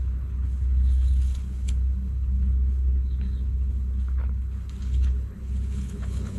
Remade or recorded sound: remade